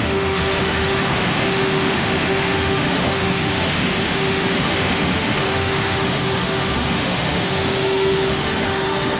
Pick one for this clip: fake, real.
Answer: fake